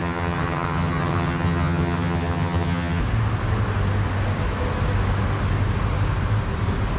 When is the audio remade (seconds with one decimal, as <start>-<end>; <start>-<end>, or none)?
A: 0.0-3.0